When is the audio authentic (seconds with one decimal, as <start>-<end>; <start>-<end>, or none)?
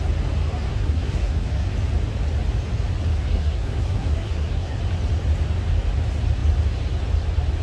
0.0-0.7; 1.7-3.1; 4.8-7.6